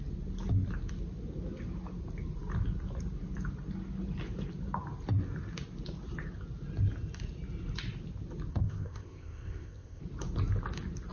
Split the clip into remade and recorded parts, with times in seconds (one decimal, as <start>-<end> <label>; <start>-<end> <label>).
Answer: 0.0-8.5 recorded; 8.5-10.0 remade; 10.0-11.1 recorded